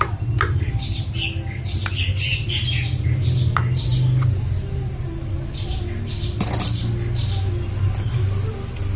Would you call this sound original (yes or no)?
yes